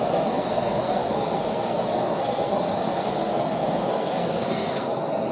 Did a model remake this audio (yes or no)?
yes